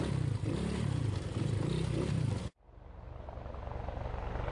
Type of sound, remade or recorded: recorded